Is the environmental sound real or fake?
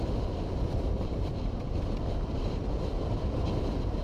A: real